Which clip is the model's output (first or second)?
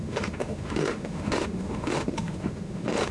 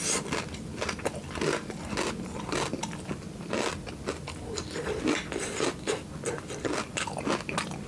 first